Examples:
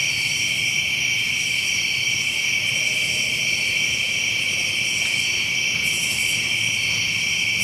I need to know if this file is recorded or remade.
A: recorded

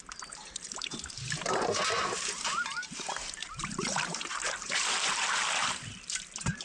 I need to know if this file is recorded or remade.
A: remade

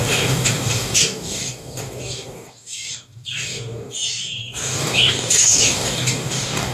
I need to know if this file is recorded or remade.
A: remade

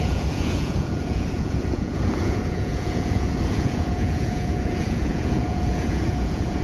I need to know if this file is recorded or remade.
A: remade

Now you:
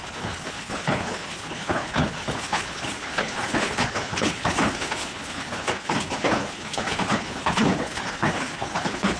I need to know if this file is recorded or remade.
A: remade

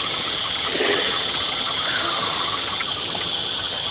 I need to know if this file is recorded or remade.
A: remade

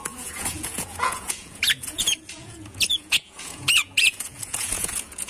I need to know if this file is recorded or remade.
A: remade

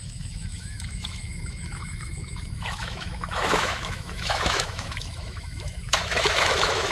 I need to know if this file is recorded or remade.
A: remade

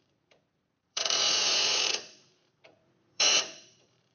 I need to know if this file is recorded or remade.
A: remade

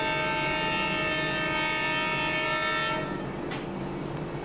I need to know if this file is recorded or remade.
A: recorded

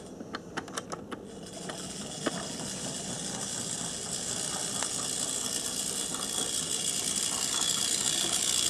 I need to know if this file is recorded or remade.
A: recorded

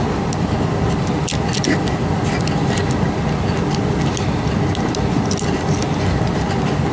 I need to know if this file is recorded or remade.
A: recorded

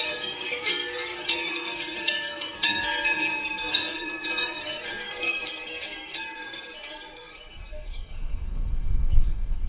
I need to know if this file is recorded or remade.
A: remade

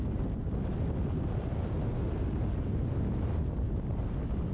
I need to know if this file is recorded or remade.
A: recorded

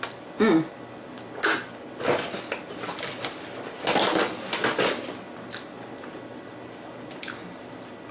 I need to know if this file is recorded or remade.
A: recorded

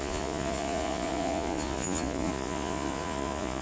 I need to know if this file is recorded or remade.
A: remade